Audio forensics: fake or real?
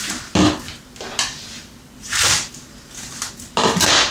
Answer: real